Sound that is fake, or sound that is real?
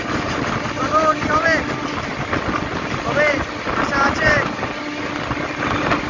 real